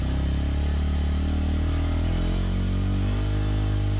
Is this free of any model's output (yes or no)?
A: yes